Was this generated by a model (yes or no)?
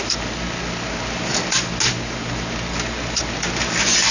no